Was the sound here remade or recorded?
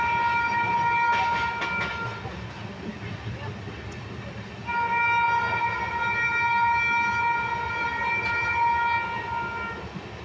recorded